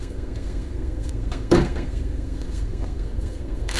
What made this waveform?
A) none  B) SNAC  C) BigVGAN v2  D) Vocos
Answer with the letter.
B